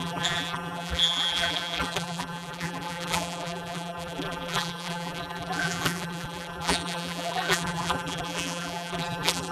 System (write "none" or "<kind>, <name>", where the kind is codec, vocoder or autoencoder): vocoder, BigVGAN v2